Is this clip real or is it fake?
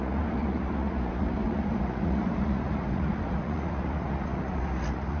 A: fake